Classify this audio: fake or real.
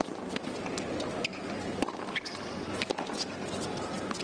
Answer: real